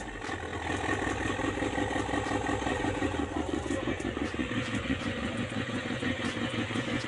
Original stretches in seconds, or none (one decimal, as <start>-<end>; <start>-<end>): 0.0-2.7